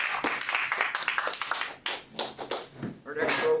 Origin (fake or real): real